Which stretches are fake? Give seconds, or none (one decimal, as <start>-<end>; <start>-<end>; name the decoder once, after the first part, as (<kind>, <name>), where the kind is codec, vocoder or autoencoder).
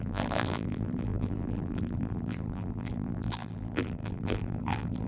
0.0-5.1 (vocoder, BigVGAN v2)